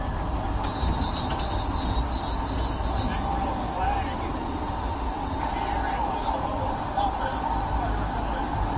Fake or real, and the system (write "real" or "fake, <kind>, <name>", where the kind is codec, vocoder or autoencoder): real